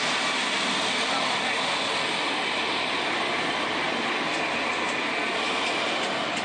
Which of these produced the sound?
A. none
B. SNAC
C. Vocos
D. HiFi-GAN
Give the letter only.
A